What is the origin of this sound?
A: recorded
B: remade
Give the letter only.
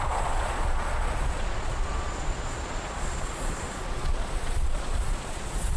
B